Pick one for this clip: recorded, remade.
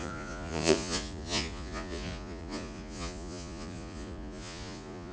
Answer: remade